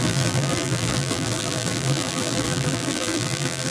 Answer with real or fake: fake